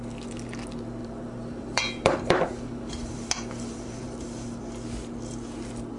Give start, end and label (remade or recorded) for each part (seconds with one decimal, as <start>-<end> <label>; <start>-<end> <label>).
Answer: 0.0-1.0 recorded; 1.0-4.6 remade; 4.6-6.0 recorded